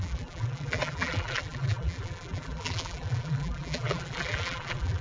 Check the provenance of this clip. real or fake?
fake